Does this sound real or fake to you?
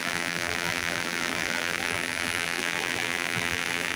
fake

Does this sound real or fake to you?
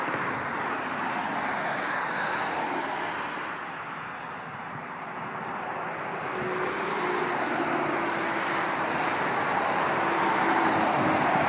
real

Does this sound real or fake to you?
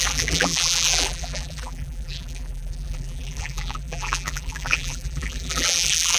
fake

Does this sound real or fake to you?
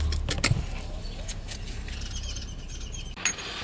real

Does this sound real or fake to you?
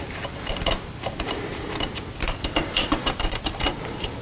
fake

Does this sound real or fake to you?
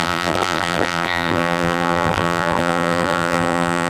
fake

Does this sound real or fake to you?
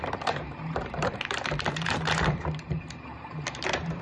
fake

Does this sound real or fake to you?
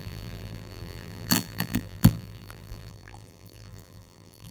fake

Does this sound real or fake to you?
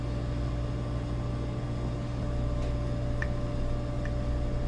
real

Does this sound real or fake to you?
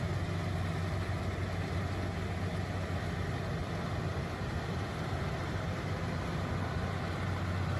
real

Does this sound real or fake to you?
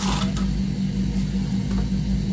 real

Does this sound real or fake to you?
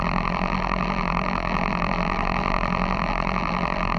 fake